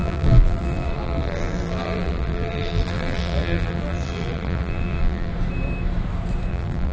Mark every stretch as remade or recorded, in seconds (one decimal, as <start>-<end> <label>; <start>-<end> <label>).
0.0-5.3 remade; 5.3-6.5 recorded; 6.5-6.9 remade